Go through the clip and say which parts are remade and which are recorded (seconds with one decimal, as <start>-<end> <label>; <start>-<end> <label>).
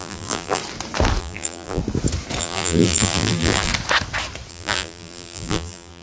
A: 0.0-0.6 remade; 0.6-1.2 recorded; 1.2-1.8 remade; 1.8-2.4 recorded; 2.4-3.7 remade; 3.7-4.5 recorded; 4.5-6.0 remade